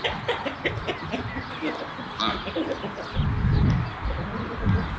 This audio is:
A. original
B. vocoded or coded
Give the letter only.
A